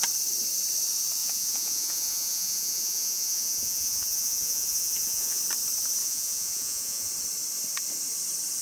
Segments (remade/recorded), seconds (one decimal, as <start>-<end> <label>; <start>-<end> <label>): 0.0-1.2 recorded; 1.2-5.4 remade; 5.4-6.0 recorded; 6.0-7.1 remade; 7.1-8.6 recorded